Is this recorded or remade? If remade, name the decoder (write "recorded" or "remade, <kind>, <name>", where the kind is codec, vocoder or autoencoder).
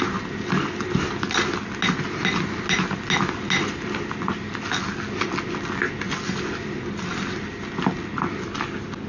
recorded